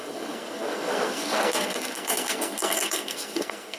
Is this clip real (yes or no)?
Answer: no